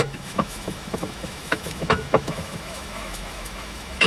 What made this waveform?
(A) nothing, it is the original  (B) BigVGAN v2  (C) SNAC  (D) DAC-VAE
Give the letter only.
D